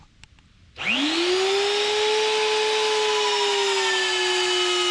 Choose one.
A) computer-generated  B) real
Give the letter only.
B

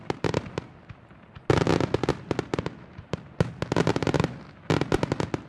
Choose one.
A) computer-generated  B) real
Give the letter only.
B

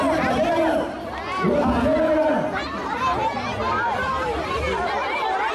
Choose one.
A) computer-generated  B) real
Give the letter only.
B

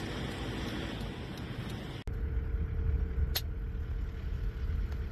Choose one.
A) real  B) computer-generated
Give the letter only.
A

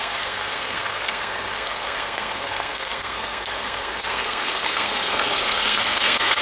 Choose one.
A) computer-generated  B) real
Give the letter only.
A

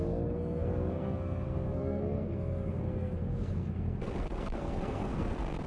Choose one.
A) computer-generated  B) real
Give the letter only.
A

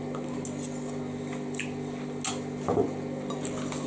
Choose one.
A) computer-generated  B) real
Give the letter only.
B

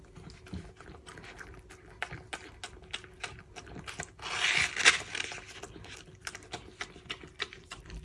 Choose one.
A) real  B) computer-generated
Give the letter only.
A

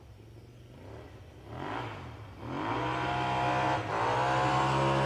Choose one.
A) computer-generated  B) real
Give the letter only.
B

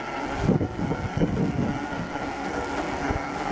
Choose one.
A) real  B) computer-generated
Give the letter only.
B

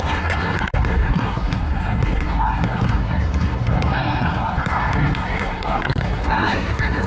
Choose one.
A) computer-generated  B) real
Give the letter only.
A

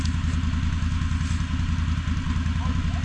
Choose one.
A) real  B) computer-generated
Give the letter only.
A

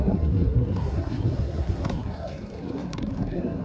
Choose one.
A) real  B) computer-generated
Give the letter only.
B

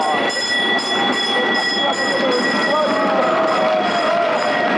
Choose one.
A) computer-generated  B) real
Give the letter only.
B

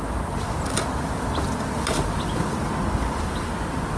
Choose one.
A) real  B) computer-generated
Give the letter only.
A